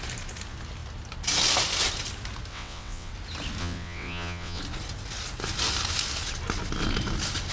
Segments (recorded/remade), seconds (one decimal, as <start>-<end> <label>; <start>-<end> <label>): 0.0-2.5 recorded; 2.5-3.1 remade; 3.1-3.6 recorded; 3.6-4.6 remade; 4.6-7.5 recorded